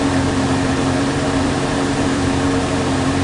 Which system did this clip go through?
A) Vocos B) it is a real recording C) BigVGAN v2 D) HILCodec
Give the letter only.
C